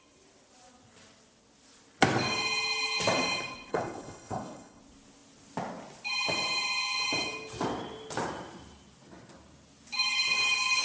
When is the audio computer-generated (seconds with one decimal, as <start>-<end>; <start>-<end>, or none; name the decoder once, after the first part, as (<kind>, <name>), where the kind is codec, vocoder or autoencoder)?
3.7-4.8 (codec, HILCodec)